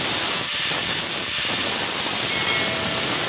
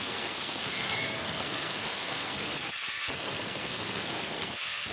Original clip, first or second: first